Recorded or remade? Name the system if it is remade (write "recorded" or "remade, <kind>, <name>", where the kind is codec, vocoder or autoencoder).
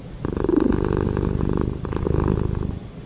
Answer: recorded